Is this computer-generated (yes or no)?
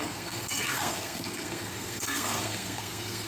yes